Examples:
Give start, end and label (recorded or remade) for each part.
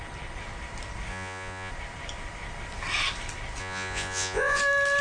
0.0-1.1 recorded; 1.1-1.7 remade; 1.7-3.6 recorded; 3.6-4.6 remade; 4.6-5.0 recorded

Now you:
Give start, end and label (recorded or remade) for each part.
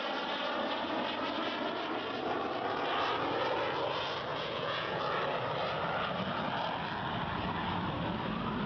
0.0-4.3 recorded; 4.3-5.0 remade; 5.0-8.7 recorded